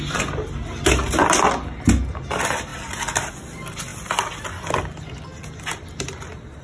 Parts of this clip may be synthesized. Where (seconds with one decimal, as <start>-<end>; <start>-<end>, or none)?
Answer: none